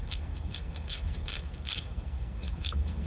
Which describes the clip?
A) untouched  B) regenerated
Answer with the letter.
B